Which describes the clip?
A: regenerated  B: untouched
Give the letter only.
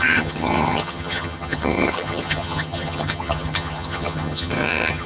A